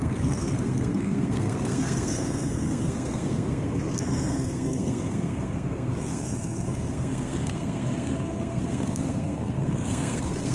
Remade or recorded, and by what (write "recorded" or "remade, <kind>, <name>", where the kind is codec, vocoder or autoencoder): remade, codec, SNAC